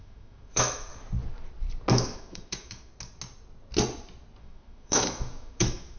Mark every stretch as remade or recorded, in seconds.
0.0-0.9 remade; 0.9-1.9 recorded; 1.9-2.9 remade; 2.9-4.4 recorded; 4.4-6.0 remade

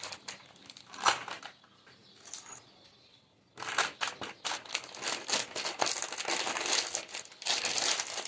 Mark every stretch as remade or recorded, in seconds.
0.0-8.3 recorded

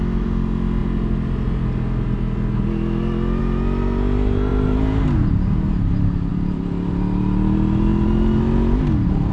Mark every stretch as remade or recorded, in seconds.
0.0-9.3 recorded

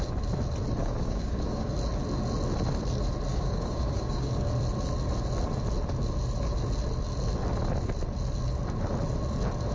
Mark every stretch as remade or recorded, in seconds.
0.0-0.8 recorded; 0.8-1.7 remade; 1.7-3.3 recorded; 3.3-4.5 remade; 4.5-9.7 recorded